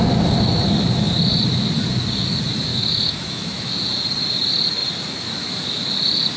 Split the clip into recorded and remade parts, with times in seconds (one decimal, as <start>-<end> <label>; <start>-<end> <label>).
0.0-2.7 recorded; 2.7-3.7 remade; 3.7-6.4 recorded